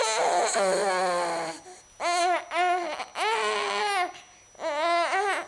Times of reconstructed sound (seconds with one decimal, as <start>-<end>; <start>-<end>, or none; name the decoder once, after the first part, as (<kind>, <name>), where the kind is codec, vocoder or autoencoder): none